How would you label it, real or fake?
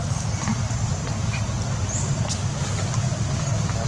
real